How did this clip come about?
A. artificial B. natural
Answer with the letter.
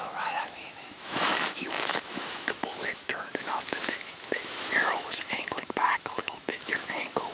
A